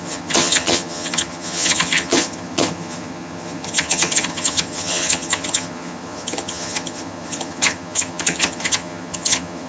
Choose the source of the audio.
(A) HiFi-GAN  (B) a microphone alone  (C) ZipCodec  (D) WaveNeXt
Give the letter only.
A